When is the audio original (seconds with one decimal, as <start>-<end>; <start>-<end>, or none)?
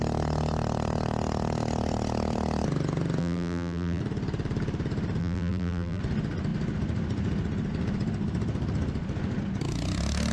0.0-3.2; 4.0-5.2; 6.0-10.3